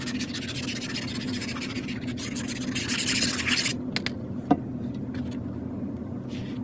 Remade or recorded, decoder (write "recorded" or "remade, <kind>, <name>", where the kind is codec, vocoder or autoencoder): recorded